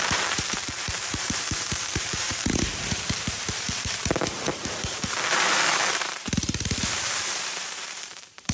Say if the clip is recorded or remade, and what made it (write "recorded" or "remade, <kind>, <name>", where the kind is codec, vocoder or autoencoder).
remade, vocoder, BigVGAN v2